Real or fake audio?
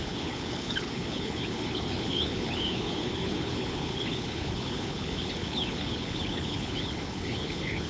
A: fake